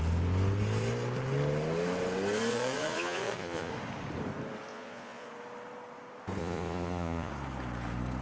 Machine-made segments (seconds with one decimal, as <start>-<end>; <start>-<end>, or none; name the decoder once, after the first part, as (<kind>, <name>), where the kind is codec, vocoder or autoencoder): 2.5-3.7 (vocoder, Vocos); 4.7-5.3; 6.4-7.3